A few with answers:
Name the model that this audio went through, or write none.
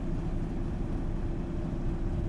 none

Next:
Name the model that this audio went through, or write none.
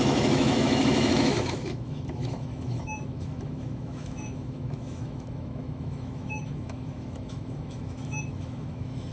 autoencoder, DAC-VAE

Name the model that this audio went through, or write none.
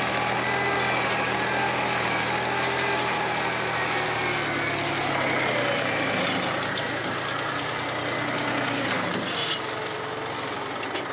none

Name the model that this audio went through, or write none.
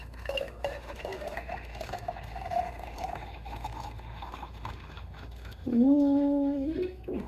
autoencoder, DAC-VAE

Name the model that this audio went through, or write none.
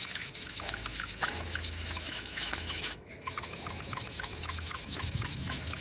autoencoder, DAC-VAE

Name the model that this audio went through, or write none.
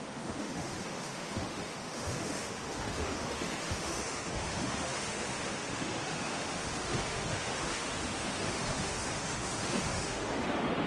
autoencoder, DAC-VAE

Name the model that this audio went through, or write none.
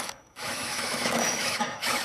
autoencoder, DAC-VAE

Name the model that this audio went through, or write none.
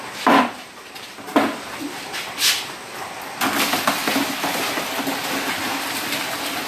none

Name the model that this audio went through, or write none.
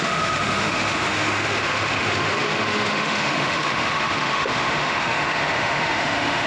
autoencoder, DAC-VAE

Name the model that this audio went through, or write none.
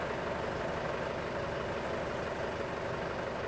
none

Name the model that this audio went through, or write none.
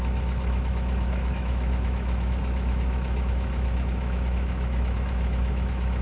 autoencoder, DAC-VAE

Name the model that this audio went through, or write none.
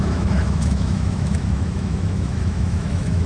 autoencoder, DAC-VAE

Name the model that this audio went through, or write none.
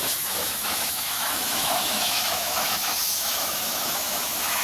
autoencoder, DAC-VAE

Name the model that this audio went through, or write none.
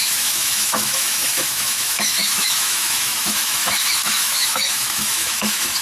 autoencoder, DAC-VAE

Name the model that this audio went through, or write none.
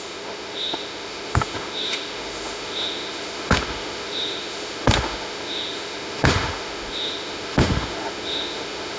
autoencoder, DAC-VAE